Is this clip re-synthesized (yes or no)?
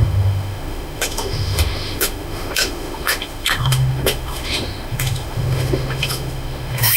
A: yes